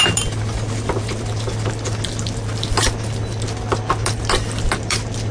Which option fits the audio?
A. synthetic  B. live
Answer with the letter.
A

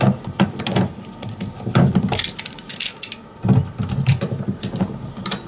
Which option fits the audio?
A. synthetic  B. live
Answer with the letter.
B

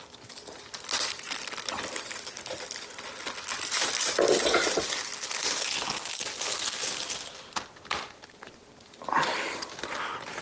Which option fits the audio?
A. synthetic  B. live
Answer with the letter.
B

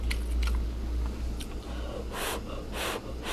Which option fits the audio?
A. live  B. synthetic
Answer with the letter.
A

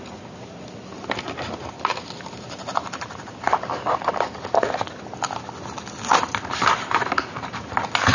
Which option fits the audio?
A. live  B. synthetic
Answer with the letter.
A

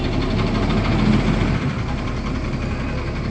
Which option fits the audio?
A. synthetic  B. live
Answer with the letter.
B